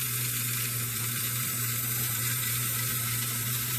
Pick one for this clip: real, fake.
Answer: fake